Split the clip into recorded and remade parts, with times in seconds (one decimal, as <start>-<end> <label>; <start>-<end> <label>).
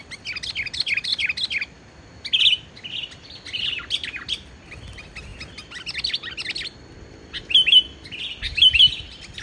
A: 0.0-9.4 recorded